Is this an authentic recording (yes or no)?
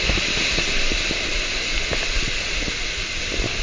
yes